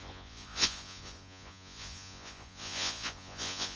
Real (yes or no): no